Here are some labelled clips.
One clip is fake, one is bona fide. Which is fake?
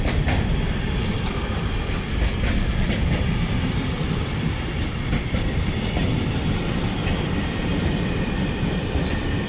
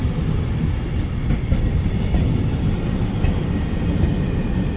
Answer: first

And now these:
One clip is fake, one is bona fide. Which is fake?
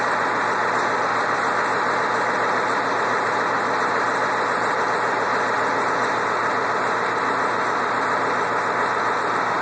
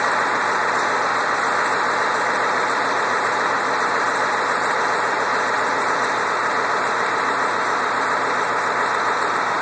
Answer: second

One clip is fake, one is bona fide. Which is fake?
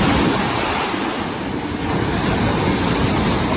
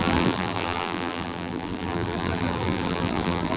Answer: second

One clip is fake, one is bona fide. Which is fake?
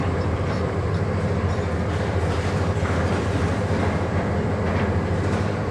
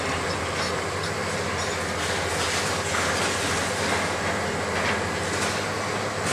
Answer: first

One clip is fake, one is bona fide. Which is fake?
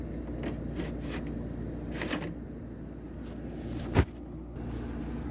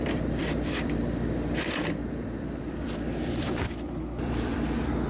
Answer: second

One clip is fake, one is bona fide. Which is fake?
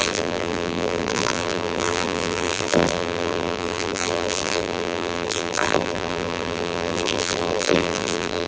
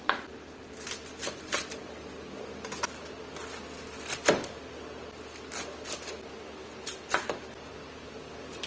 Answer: first